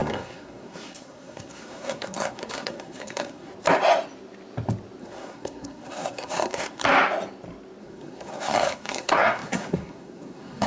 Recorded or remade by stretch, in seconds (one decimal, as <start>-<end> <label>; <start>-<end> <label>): 0.0-3.5 remade; 3.5-5.0 recorded; 5.0-6.9 remade; 6.9-7.8 recorded; 7.8-10.7 remade